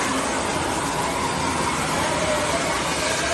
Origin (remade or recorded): recorded